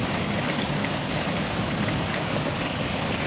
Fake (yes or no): yes